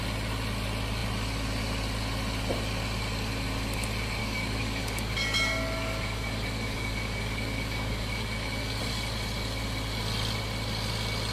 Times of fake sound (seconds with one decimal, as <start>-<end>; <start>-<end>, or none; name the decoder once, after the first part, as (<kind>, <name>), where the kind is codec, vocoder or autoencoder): 4.2-8.8 (codec, DAC)